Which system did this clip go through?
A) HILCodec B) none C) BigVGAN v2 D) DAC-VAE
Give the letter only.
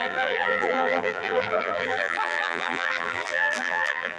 C